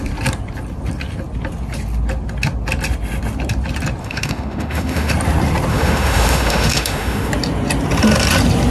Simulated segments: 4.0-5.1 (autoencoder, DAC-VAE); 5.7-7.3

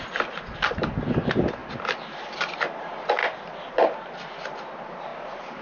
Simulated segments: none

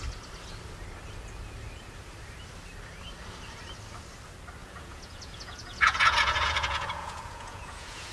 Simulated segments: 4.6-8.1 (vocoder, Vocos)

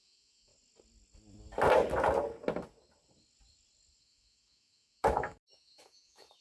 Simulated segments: 0.0-0.5 (autoencoder, DAC-VAE); 4.0-6.4

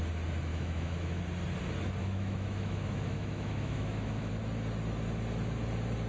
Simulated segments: 0.5-1.2 (autoencoder, DAC-VAE); 2.0-4.3

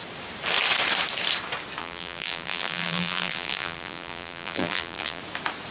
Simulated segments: 1.8-5.2 (vocoder, BigVGAN v2)

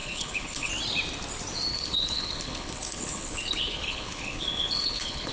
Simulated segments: 0.0-0.7 (codec, HILCodec); 1.7-5.3